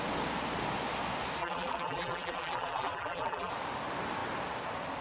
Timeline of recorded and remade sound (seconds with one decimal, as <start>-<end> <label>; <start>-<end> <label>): 0.0-1.4 recorded; 1.4-3.5 remade; 3.5-5.0 recorded